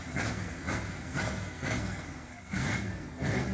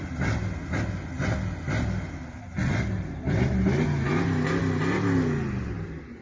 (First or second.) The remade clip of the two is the first